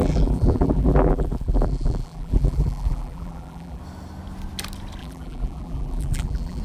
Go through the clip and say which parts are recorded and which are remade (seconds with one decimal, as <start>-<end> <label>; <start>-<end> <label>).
0.0-3.8 remade; 3.8-5.0 recorded; 5.0-6.6 remade